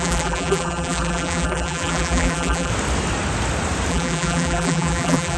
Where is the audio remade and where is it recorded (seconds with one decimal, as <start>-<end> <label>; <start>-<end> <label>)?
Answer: 0.0-2.7 remade; 2.7-3.9 recorded; 3.9-5.4 remade